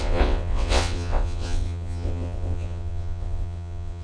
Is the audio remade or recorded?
remade